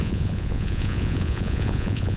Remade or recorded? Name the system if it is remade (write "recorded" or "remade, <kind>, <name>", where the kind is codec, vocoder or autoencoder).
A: remade, vocoder, Vocos